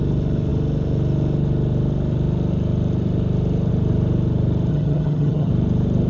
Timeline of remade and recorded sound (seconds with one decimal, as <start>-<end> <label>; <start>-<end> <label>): 0.0-4.7 recorded; 4.7-5.5 remade; 5.5-6.1 recorded